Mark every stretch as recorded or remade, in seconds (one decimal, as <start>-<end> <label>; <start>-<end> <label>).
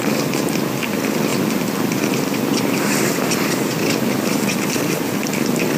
0.0-5.8 recorded